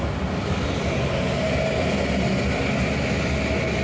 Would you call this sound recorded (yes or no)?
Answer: yes